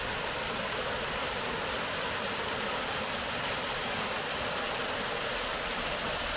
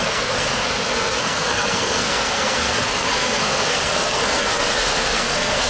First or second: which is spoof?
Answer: second